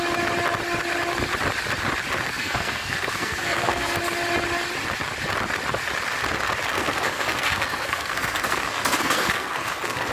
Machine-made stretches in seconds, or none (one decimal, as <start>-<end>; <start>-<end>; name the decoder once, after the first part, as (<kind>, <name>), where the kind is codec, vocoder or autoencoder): 2.3-4.0 (codec, SNAC); 6.7-10.1